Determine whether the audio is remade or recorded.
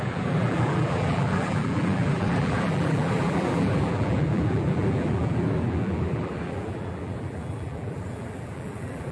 remade